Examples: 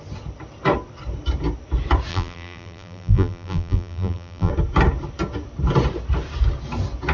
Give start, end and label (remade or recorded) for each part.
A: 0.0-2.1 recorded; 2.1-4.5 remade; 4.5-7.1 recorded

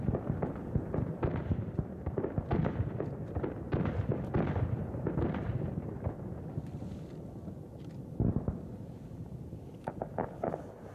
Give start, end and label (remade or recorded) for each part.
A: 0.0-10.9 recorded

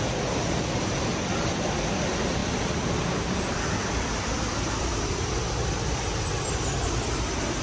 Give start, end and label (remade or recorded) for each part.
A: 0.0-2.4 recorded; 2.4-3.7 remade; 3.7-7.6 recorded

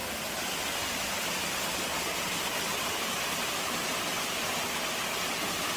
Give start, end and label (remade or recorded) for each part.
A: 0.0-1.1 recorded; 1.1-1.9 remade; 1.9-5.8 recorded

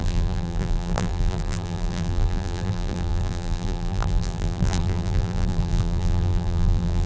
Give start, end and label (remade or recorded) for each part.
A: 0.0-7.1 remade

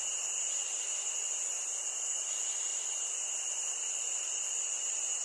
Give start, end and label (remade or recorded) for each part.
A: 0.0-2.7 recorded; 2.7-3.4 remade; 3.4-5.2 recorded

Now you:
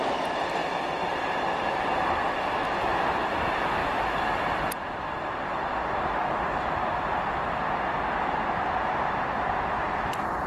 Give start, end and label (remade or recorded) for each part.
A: 0.0-0.6 recorded; 0.6-1.2 remade; 1.2-10.5 recorded